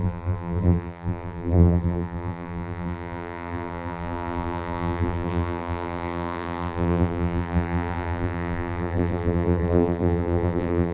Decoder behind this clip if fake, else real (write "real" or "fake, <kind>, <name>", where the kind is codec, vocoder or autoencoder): fake, vocoder, BigVGAN v2